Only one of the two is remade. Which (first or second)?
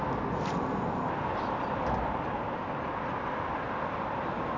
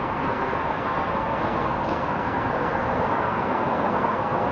second